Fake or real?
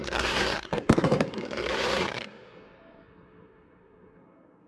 fake